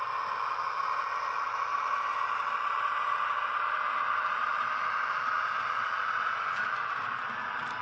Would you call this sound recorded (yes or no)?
yes